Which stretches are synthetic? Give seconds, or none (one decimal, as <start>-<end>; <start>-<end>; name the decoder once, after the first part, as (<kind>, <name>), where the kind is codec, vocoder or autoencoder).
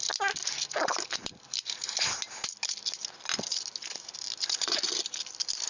none